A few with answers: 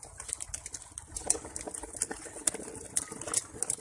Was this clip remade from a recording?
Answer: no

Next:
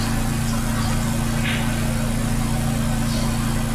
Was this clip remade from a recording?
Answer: no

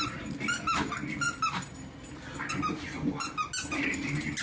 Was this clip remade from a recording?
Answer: no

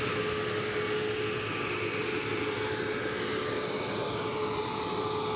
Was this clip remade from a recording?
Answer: no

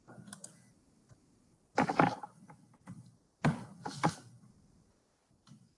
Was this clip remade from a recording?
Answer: no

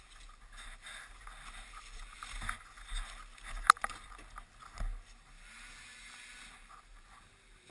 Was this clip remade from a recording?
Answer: no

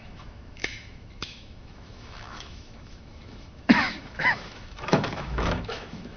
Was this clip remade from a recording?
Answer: yes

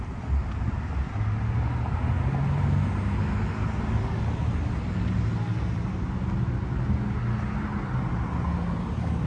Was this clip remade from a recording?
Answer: no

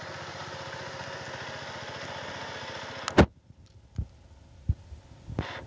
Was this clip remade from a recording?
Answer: no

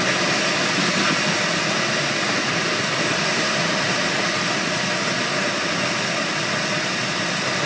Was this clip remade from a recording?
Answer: no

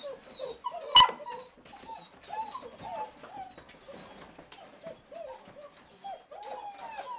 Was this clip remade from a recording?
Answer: no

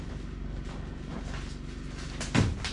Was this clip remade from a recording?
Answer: no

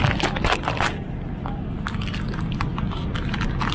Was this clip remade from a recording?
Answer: no